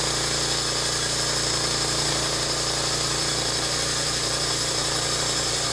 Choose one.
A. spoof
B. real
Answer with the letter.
B